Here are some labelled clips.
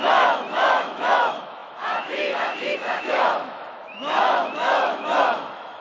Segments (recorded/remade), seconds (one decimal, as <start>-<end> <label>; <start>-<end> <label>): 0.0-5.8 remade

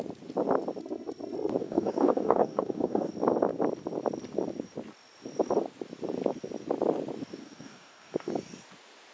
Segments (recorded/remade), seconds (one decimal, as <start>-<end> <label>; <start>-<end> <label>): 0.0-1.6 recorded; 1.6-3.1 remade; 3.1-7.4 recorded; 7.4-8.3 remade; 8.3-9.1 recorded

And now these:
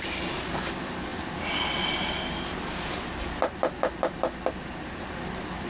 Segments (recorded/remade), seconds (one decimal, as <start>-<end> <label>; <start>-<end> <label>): 0.0-5.7 recorded

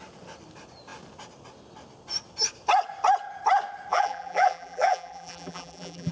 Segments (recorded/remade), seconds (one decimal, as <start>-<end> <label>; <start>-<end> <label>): 0.0-3.9 recorded; 3.9-6.1 remade